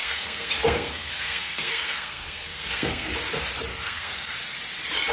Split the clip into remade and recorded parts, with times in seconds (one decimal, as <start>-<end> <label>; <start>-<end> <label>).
0.0-3.1 remade; 3.1-3.7 recorded; 3.7-4.3 remade; 4.3-5.1 recorded